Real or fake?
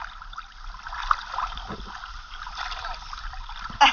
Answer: real